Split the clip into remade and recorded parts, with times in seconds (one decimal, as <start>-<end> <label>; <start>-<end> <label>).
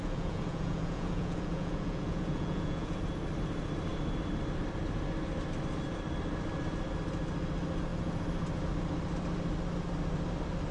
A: 0.0-3.0 remade; 3.0-10.7 recorded